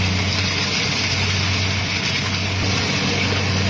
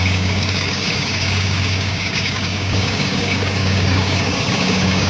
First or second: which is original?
first